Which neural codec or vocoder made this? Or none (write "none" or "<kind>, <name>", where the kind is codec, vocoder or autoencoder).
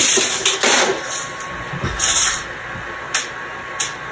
none